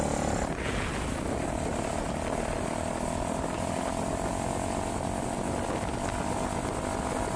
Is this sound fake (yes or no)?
no